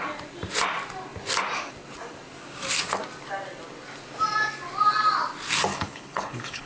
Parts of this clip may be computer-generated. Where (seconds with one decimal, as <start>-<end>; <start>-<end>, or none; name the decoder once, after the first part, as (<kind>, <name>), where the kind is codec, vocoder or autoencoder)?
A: 5.7-6.7 (codec, HILCodec)